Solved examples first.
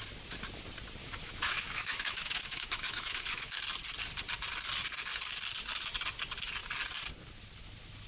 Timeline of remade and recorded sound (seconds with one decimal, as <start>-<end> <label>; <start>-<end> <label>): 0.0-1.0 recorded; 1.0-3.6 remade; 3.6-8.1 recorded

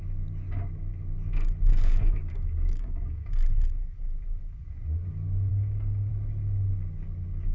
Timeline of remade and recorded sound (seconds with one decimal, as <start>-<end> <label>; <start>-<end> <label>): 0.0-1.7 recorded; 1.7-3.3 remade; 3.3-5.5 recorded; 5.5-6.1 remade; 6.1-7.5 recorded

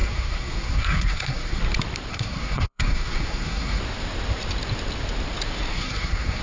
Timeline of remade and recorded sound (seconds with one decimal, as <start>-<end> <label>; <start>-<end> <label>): 0.0-1.6 remade; 1.6-2.1 recorded; 2.1-3.8 remade; 3.8-5.7 recorded; 5.7-6.4 remade

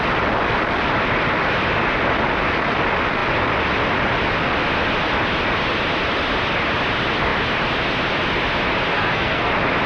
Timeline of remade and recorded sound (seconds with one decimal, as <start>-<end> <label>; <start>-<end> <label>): 0.0-8.9 recorded; 8.9-9.5 remade; 9.5-9.9 recorded

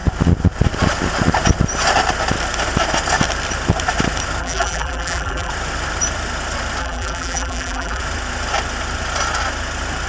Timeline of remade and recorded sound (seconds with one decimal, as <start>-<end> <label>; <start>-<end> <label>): 0.0-4.4 recorded; 4.4-5.5 remade; 5.5-6.8 recorded; 6.8-8.0 remade; 8.0-10.1 recorded